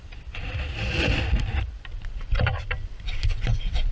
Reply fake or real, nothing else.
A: fake